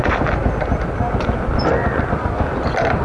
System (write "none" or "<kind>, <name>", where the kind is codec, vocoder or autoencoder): none